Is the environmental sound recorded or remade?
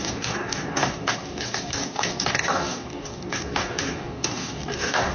remade